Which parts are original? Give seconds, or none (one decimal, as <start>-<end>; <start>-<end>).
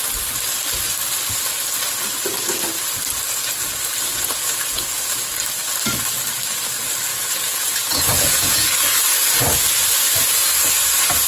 0.0-4.1; 5.0-7.1; 8.7-11.3